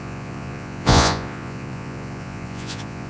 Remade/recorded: remade